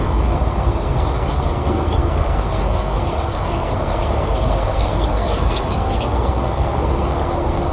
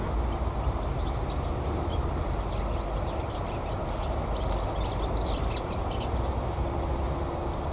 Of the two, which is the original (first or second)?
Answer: second